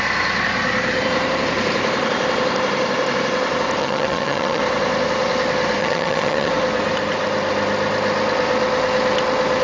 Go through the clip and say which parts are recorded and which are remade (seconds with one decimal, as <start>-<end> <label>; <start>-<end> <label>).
0.0-3.8 recorded; 3.8-4.6 remade; 4.6-5.8 recorded; 5.8-6.5 remade; 6.5-9.6 recorded